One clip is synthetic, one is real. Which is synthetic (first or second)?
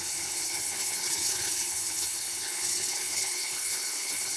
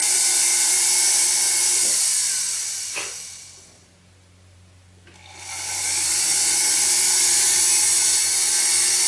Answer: first